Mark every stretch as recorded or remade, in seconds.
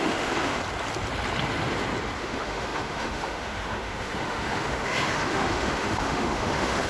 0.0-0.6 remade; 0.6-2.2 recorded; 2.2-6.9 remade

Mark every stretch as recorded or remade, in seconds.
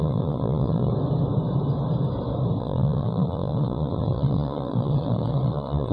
0.0-0.9 remade; 0.9-2.6 recorded; 2.6-5.9 remade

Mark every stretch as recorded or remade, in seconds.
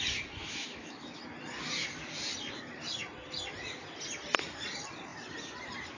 0.0-0.4 recorded; 0.4-1.2 remade; 1.2-6.0 recorded